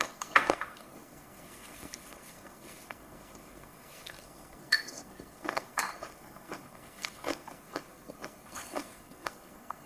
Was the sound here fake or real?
fake